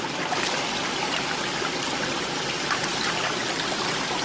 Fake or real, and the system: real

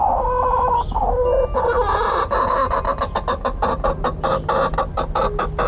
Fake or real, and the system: real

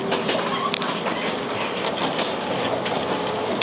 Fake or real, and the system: real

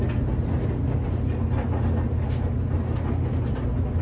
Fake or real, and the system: real